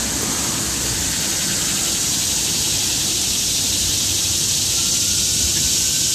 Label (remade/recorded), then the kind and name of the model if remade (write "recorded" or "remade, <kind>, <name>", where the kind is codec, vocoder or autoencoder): recorded